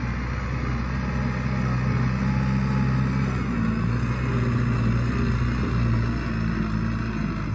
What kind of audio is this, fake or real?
real